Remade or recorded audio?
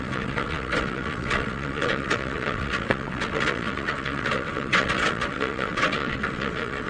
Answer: remade